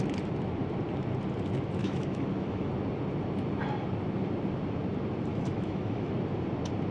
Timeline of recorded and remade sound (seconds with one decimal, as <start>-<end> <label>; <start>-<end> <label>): 0.0-1.8 recorded; 1.8-2.7 remade; 2.7-5.3 recorded; 5.3-6.1 remade; 6.1-6.9 recorded